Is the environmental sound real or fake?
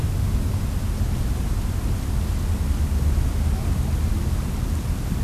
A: real